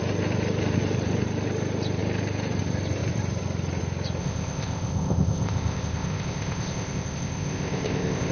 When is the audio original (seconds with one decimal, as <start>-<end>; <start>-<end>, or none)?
0.0-4.2